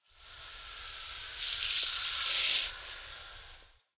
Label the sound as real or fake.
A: real